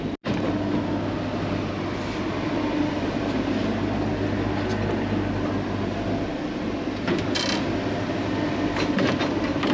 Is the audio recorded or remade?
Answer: recorded